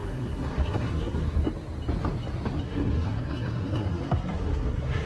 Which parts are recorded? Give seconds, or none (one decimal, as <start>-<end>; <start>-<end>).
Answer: 1.4-2.6